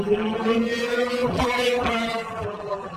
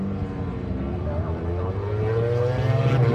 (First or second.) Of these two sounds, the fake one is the first